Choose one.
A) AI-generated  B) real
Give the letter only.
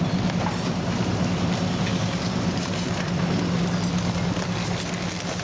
B